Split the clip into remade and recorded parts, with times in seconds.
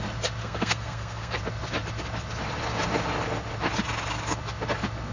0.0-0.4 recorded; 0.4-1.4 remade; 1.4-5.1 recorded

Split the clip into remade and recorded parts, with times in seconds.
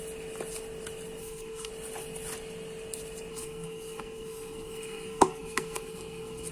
0.0-1.2 recorded; 1.2-1.7 remade; 1.7-3.3 recorded; 3.3-6.5 remade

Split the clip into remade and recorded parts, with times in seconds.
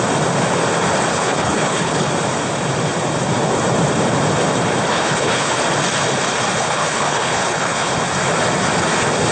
0.0-1.1 recorded; 1.1-2.1 remade; 2.1-4.9 recorded; 4.9-5.6 remade; 5.6-6.5 recorded; 6.5-7.9 remade; 7.9-9.3 recorded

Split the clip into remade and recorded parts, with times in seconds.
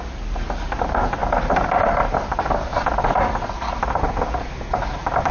0.0-5.3 recorded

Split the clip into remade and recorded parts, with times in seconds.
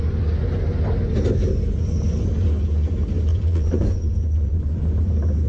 0.0-3.3 recorded; 3.3-4.8 remade; 4.8-5.5 recorded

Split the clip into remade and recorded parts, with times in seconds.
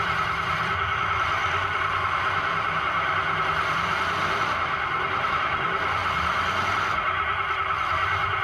0.0-6.0 remade; 6.0-6.6 recorded; 6.6-8.4 remade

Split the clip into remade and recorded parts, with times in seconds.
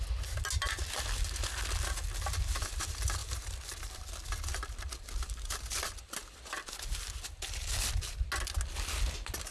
0.0-3.2 recorded; 3.2-4.0 remade; 4.0-9.5 recorded